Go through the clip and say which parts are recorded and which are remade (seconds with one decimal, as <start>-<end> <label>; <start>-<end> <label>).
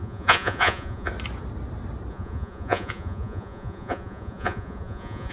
0.0-1.1 remade; 1.1-2.1 recorded; 2.1-5.3 remade